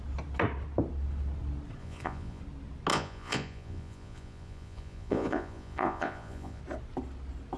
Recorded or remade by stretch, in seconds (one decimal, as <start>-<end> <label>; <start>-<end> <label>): 0.0-1.8 recorded; 1.8-2.4 remade; 2.4-2.9 recorded; 2.9-6.6 remade; 6.6-7.6 recorded